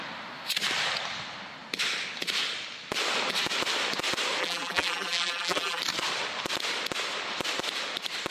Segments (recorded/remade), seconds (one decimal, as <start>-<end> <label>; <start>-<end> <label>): 0.0-4.4 recorded; 4.4-5.8 remade; 5.8-8.3 recorded